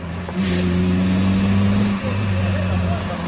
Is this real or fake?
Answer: real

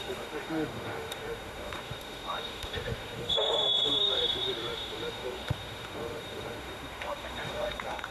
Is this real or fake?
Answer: fake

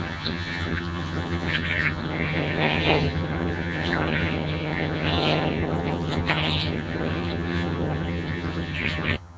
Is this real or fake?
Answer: fake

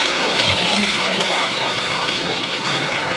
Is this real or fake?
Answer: fake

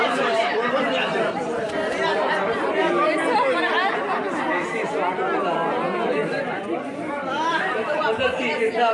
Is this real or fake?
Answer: real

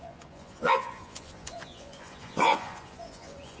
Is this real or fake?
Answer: fake